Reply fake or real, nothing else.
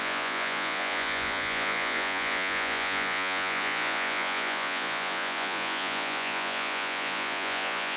fake